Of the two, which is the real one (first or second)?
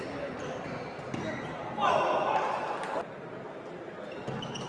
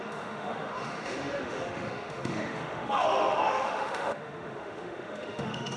first